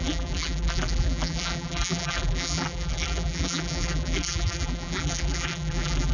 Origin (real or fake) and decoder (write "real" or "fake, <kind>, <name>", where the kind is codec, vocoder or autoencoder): fake, vocoder, BigVGAN v2